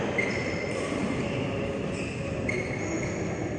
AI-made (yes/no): no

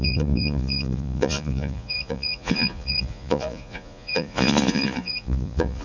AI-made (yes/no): yes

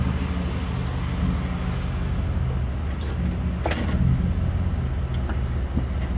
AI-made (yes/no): no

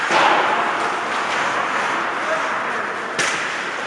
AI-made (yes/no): no